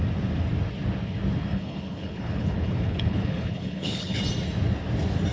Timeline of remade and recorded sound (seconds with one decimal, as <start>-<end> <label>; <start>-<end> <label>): 0.0-1.5 recorded; 1.5-4.2 remade; 4.2-5.3 recorded